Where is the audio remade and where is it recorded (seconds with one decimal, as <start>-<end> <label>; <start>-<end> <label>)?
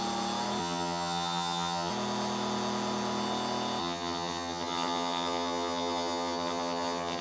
0.0-0.6 recorded; 0.6-1.9 remade; 1.9-3.8 recorded; 3.8-7.2 remade